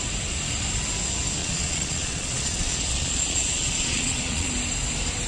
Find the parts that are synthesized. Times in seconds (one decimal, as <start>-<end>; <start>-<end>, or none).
1.4-4.5